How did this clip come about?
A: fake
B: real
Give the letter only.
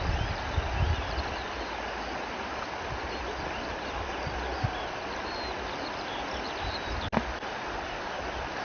B